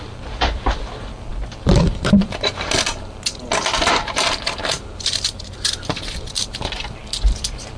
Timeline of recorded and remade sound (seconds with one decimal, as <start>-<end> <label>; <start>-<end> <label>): 0.0-7.8 remade